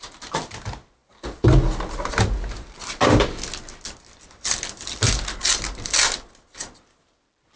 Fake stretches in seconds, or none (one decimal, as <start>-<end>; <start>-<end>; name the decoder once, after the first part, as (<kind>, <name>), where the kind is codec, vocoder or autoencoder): none